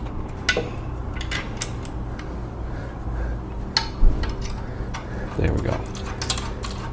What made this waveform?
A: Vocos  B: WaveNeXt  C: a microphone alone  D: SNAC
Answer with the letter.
C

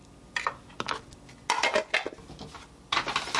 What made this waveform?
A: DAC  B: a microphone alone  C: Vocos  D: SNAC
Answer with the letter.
B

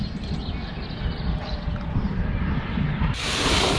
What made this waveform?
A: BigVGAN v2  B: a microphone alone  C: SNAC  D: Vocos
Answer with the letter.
B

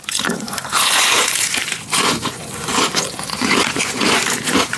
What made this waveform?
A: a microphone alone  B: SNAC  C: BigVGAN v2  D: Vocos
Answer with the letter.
D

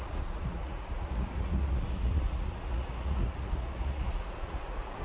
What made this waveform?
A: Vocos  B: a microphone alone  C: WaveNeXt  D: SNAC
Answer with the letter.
A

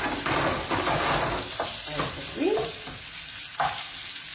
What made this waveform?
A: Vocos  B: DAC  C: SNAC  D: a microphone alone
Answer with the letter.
D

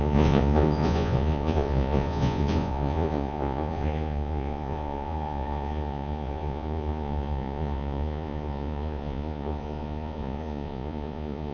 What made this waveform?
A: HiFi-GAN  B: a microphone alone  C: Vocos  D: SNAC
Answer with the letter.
C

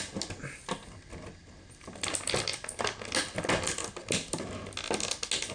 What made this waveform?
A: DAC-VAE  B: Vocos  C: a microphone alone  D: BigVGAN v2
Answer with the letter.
C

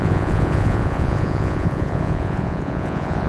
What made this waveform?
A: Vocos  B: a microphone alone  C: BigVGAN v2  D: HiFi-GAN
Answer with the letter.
A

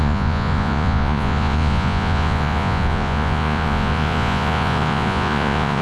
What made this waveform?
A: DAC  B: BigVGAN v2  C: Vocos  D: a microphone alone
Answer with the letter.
C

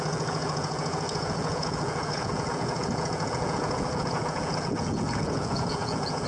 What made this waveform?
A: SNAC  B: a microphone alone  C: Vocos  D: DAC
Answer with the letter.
C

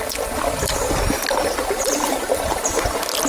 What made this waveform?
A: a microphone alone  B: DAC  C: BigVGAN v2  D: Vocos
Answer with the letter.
A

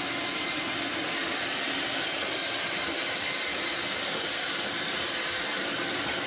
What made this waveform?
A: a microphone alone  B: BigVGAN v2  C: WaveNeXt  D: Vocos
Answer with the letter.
A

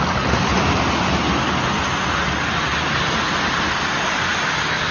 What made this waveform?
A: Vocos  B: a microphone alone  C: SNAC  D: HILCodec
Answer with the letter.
B